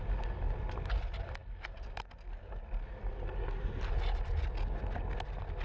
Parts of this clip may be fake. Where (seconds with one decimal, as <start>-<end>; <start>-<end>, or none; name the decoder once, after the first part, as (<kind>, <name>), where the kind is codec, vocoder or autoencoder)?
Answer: none